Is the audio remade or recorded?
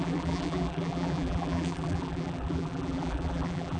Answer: remade